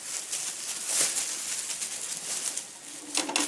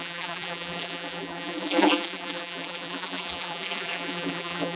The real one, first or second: first